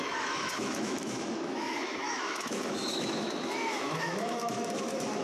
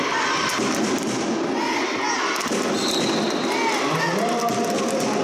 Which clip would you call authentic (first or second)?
second